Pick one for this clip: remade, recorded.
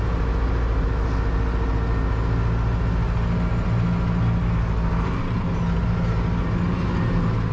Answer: recorded